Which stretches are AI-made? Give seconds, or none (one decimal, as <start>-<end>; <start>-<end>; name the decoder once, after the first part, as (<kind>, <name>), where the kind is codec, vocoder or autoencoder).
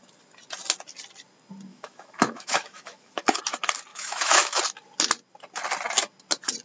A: 1.7-3.4 (autoencoder, DAC-VAE); 3.9-4.6